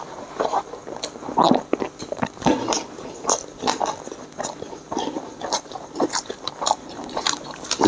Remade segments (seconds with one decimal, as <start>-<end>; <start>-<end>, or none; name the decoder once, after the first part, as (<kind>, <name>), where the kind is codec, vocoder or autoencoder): 0.0-0.8 (vocoder, BigVGAN v2); 4.7-7.9

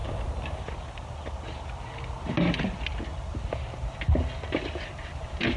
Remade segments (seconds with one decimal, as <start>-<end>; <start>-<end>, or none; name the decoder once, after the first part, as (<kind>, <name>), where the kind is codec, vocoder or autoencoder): none

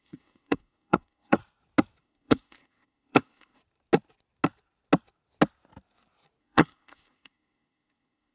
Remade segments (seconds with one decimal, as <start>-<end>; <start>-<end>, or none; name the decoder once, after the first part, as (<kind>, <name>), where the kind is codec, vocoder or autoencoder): 0.0-1.4 (codec, SNAC); 2.0-3.6; 6.4-8.3

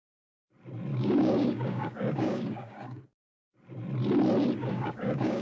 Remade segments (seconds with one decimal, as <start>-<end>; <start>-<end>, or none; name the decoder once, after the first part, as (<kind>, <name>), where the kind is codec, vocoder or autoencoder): 0.9-3.0 (codec, DAC); 4.6-5.4

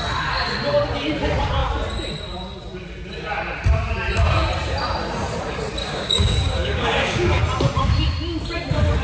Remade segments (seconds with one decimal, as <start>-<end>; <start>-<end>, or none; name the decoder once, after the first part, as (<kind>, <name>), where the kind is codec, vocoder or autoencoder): 5.8-7.4 (codec, DAC)

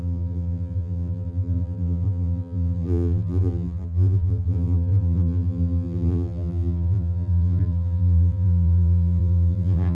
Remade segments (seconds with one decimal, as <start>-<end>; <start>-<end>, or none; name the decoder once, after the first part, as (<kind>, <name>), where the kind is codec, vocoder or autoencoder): 0.0-9.9 (vocoder, BigVGAN v2)

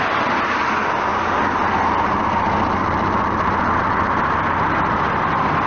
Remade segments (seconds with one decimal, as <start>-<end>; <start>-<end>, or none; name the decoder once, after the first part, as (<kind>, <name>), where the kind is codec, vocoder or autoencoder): 2.8-5.2 (vocoder, BigVGAN v2)

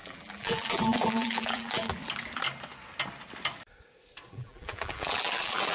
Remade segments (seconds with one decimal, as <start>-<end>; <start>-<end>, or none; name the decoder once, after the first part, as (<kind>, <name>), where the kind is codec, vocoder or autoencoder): 0.0-2.0 (vocoder, BigVGAN v2); 4.3-5.7